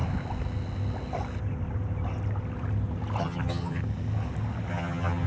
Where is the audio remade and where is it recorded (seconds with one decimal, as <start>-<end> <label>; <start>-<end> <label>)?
0.0-3.2 recorded; 3.2-3.8 remade; 3.8-4.7 recorded; 4.7-5.3 remade